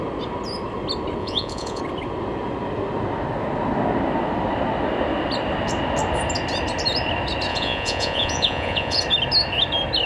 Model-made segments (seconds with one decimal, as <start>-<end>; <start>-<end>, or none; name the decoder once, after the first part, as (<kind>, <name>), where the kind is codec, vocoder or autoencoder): 1.2-1.8 (vocoder, Vocos); 7.5-9.0